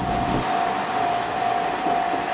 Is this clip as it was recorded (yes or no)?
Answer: yes